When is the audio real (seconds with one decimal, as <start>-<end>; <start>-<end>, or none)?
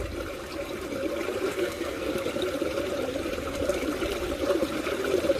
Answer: 0.0-1.5; 2.1-5.4